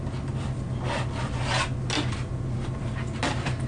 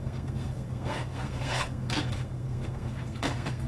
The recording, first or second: first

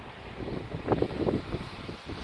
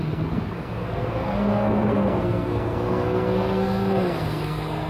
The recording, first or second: first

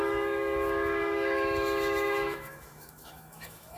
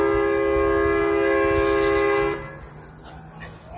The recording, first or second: second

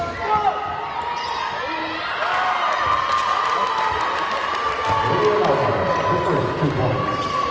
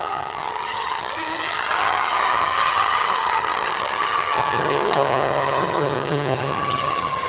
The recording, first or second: first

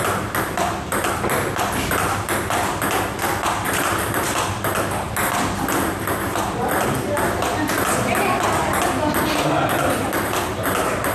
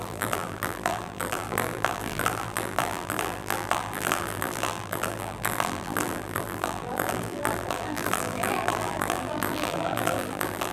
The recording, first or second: first